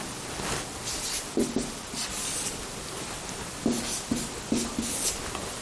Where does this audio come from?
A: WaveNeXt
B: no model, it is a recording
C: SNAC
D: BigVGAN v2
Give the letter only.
B